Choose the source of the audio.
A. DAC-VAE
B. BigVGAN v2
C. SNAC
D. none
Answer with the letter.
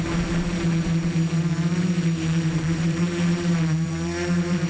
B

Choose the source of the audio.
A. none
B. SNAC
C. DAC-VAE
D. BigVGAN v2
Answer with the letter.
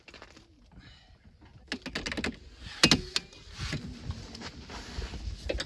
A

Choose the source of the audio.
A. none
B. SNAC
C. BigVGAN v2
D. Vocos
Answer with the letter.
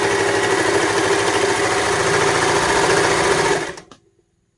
A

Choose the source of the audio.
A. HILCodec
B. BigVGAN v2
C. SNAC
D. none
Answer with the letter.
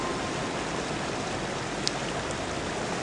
D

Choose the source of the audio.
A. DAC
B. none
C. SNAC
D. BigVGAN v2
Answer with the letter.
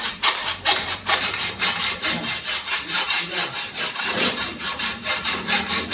D